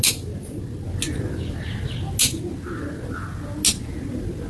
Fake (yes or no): no